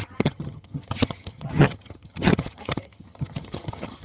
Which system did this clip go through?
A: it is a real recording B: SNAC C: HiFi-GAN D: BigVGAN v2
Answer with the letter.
C